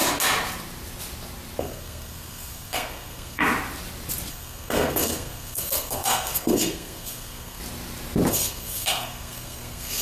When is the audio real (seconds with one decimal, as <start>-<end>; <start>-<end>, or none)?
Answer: 0.0-1.6; 3.4-4.3; 7.6-8.3